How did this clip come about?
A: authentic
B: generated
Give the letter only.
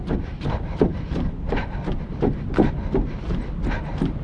A